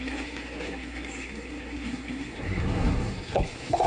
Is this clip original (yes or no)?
no